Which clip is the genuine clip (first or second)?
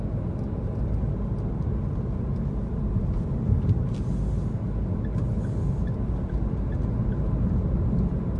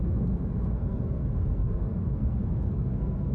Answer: first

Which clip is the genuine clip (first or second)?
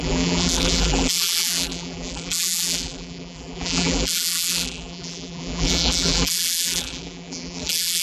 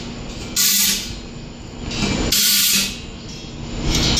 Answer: second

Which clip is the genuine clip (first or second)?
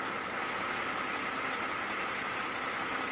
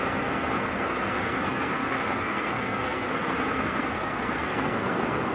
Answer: first